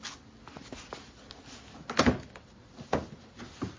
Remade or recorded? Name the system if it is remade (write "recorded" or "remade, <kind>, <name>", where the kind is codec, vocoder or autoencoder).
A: recorded